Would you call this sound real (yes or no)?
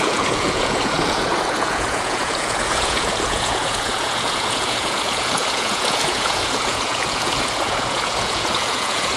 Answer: no